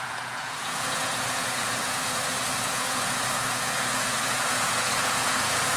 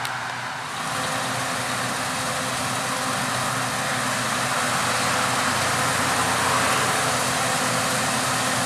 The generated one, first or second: first